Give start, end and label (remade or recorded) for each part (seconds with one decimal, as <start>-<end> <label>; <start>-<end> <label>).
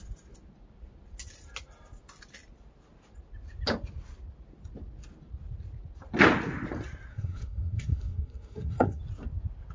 0.0-7.1 recorded; 7.1-9.0 remade; 9.0-9.7 recorded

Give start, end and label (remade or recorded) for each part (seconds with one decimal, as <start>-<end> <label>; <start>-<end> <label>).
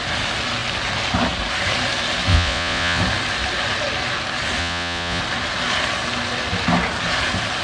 0.0-2.3 recorded; 2.3-3.0 remade; 3.0-4.6 recorded; 4.6-5.2 remade; 5.2-7.6 recorded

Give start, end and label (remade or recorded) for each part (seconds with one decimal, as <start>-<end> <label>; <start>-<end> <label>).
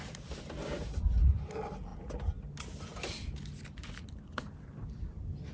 0.0-5.5 recorded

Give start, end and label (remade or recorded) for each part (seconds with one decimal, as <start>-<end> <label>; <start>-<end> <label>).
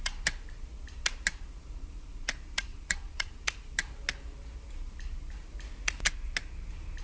0.0-2.7 recorded; 2.7-3.4 remade; 3.4-7.0 recorded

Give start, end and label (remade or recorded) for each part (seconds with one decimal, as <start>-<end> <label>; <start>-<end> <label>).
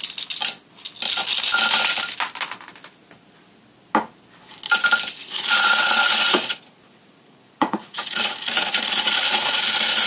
0.0-5.2 recorded; 5.2-9.6 remade; 9.6-10.1 recorded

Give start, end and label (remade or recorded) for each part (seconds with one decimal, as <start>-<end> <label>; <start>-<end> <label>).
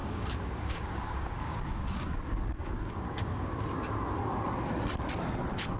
0.0-3.5 remade; 3.5-5.8 recorded